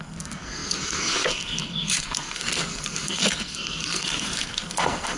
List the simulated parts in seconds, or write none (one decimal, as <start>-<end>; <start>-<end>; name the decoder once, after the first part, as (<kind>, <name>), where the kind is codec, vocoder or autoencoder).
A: 0.0-5.2 (codec, SNAC)